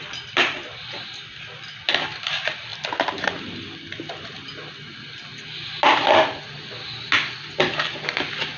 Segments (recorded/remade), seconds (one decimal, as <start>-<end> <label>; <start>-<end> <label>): 0.0-8.6 recorded